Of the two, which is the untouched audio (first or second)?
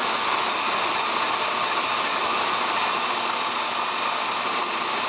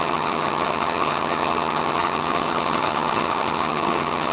first